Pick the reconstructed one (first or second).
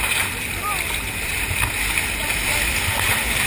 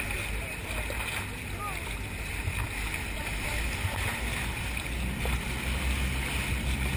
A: first